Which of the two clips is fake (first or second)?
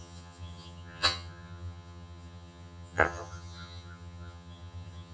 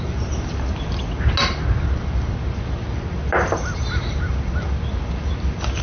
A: first